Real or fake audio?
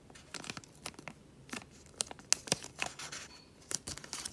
real